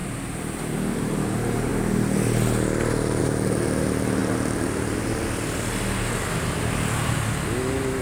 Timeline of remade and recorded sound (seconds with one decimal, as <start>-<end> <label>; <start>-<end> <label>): 0.0-0.7 remade; 0.7-4.2 recorded; 4.2-5.0 remade; 5.0-8.0 recorded